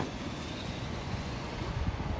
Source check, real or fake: fake